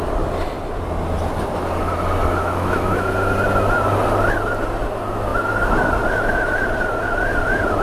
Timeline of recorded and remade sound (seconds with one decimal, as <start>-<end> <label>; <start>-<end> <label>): 0.0-2.4 recorded; 2.4-3.1 remade; 3.1-7.8 recorded